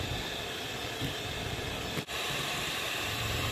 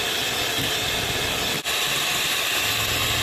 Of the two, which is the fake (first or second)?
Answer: first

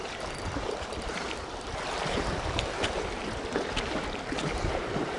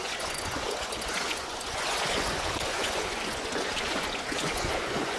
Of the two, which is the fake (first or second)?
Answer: second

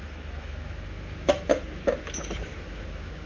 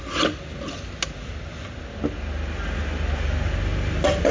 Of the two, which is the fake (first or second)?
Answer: first